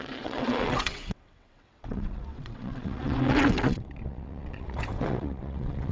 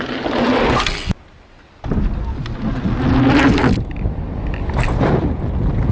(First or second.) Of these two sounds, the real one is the second